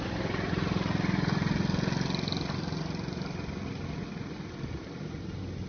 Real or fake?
real